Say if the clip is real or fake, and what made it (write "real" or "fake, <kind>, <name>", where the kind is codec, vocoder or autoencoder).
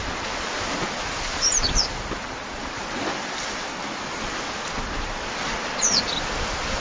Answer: fake, vocoder, BigVGAN v2